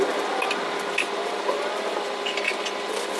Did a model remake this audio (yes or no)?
no